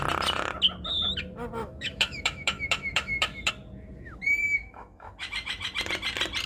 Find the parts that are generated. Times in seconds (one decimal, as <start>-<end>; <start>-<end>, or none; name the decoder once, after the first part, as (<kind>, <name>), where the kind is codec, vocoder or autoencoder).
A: 1.6-3.5 (autoencoder, DAC-VAE); 4.4-5.7